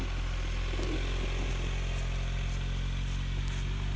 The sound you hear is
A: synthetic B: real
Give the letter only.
B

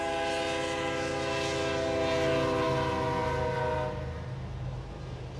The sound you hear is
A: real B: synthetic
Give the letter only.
A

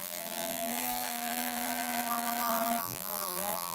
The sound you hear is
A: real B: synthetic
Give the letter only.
B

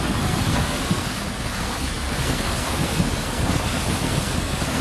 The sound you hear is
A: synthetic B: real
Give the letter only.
A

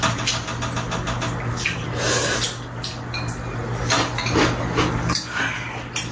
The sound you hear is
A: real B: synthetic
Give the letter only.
A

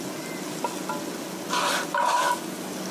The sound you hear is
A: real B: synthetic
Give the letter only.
A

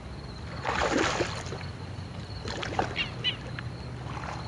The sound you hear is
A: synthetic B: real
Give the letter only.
B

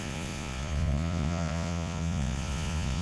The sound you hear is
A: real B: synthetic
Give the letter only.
B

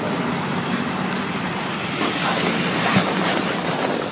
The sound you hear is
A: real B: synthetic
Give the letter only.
A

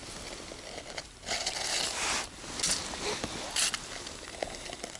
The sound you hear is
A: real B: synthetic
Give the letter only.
A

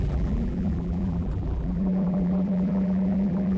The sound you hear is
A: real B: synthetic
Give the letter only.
B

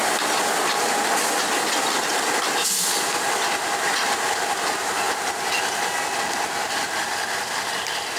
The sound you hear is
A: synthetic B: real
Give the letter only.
B